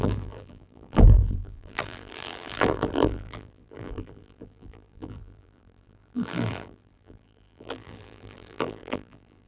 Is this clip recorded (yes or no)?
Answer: no